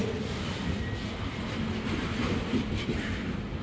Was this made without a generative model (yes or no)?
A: yes